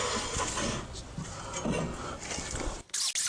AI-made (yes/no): no